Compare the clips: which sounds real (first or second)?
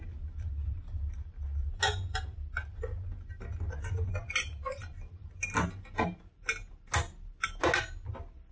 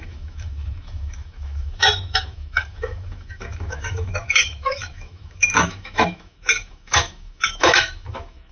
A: first